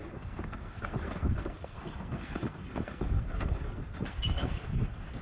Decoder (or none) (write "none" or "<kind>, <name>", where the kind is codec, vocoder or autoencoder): codec, SNAC